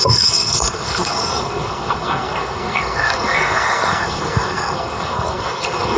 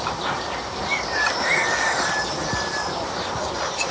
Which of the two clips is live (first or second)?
second